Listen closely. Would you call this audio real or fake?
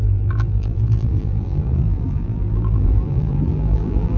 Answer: fake